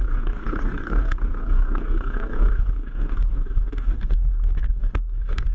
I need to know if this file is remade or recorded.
remade